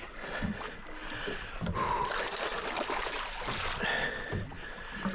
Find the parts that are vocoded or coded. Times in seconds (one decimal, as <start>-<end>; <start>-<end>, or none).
none